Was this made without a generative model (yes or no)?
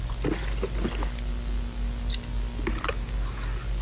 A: yes